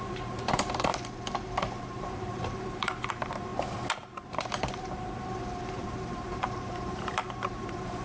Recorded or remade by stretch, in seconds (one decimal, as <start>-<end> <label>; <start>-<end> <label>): 0.0-0.9 remade; 0.9-2.0 recorded; 2.0-3.5 remade; 3.5-4.3 recorded; 4.3-8.0 remade

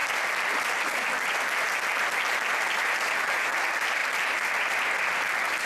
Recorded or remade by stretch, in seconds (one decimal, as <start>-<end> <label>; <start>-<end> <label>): 0.0-4.0 recorded; 4.0-4.7 remade; 4.7-5.7 recorded

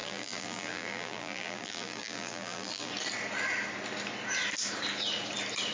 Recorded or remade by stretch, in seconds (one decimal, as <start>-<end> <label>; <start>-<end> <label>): 0.0-2.9 remade; 2.9-5.7 recorded

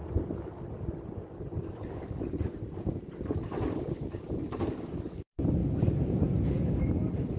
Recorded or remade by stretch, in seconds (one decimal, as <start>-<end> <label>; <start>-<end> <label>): 0.0-4.4 remade; 4.4-7.4 recorded